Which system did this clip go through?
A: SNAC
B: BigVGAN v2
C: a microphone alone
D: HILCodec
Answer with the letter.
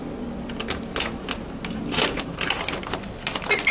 C